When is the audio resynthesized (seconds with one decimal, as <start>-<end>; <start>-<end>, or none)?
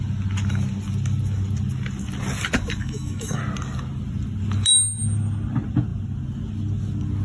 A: 2.8-3.4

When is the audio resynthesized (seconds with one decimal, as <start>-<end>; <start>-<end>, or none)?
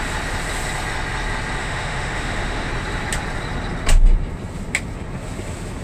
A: 1.6-2.7